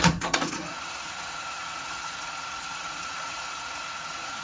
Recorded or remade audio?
remade